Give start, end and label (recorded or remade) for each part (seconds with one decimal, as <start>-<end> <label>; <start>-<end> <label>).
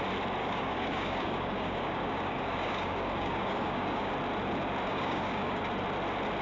0.0-0.4 recorded; 0.4-4.1 remade; 4.1-4.9 recorded; 4.9-5.6 remade; 5.6-6.4 recorded